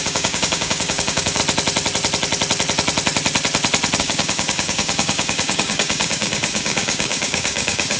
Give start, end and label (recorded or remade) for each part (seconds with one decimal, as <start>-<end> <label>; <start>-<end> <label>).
0.0-1.4 remade; 1.4-4.0 recorded; 4.0-8.0 remade

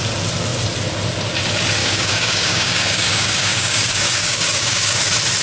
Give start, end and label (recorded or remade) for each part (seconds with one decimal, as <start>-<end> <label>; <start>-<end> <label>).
0.0-1.8 recorded; 1.8-5.0 remade; 5.0-5.4 recorded

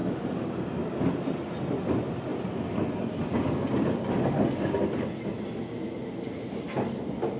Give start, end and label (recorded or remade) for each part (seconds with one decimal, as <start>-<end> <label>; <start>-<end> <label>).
0.0-7.4 recorded